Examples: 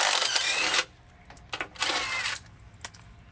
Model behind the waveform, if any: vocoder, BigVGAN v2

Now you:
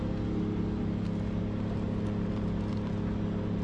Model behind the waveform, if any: none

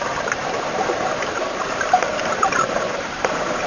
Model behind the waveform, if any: vocoder, BigVGAN v2